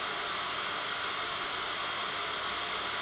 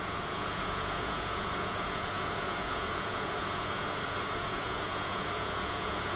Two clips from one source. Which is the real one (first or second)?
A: first